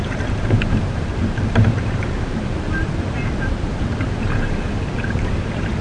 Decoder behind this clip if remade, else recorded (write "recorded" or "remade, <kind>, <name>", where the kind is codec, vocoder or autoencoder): remade, vocoder, BigVGAN v2